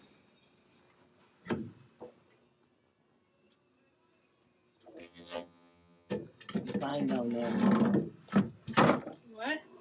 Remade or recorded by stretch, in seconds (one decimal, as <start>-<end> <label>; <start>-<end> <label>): 0.0-5.0 recorded; 5.0-6.1 remade; 6.1-9.8 recorded